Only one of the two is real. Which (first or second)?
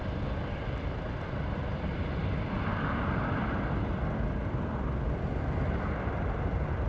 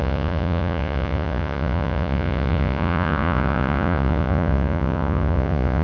first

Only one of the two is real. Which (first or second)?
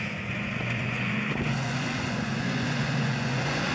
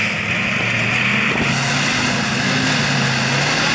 second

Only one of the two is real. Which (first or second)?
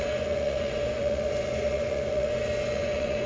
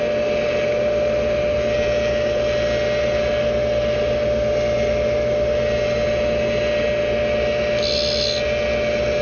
second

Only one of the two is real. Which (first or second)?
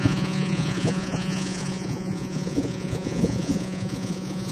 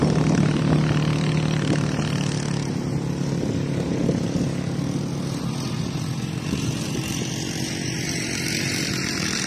second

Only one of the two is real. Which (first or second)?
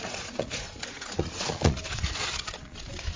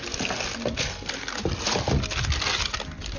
second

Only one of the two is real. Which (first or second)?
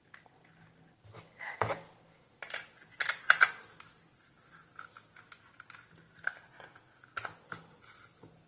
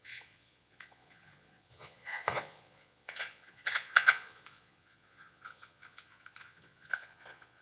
first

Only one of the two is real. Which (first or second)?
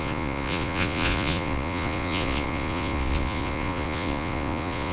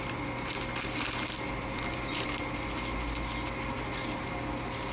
second